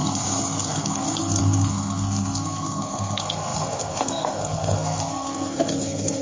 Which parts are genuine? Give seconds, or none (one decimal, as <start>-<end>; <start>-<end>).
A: none